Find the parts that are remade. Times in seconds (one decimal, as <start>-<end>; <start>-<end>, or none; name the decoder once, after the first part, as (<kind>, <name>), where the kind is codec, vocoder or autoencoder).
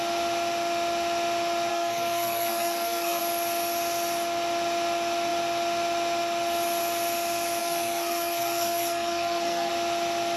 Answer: 1.7-3.2 (codec, SNAC); 7.6-9.7